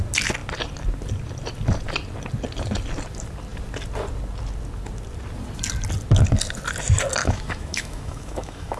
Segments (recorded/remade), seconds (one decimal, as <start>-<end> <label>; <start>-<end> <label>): 0.0-7.2 recorded; 7.2-8.8 remade